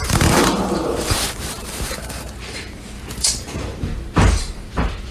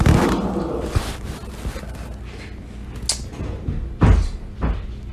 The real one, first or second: second